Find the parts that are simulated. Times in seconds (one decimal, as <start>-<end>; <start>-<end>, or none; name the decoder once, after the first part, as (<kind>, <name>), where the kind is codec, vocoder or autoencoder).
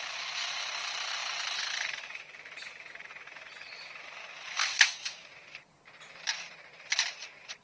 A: 0.0-7.6 (vocoder, BigVGAN v2)